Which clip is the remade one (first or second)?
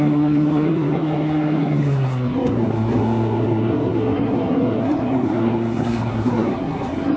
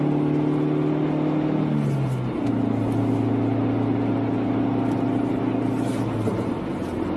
first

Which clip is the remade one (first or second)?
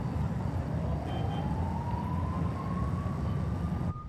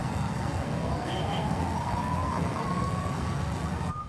second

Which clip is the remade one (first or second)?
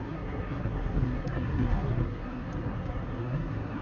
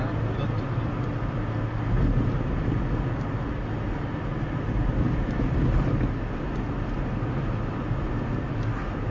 first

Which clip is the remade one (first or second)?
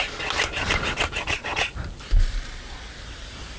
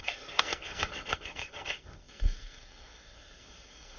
second